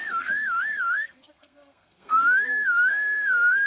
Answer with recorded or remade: remade